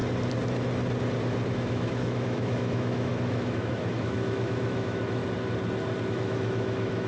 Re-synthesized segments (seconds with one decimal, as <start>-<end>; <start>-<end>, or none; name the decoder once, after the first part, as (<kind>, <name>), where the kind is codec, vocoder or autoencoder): 1.5-5.2 (autoencoder, DAC-VAE); 6.1-7.1